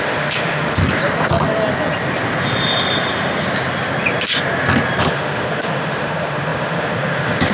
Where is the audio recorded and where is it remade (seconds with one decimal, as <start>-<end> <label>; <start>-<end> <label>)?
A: 0.0-0.8 remade; 0.8-5.0 recorded; 5.0-7.5 remade